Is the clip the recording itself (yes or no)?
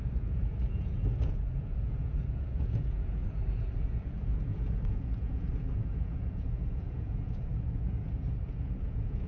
no